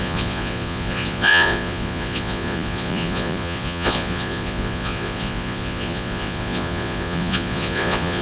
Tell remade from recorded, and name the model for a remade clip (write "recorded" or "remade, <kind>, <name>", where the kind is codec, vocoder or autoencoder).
remade, vocoder, Vocos